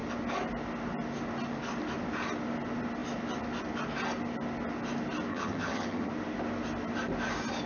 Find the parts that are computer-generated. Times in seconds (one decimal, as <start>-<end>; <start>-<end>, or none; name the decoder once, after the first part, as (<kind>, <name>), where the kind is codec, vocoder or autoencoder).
5.3-6.1 (vocoder, HiFi-GAN)